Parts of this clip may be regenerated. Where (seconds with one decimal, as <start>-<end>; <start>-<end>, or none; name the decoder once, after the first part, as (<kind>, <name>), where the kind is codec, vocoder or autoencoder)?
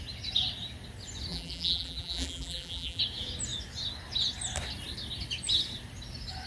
1.3-3.0 (vocoder, BigVGAN v2)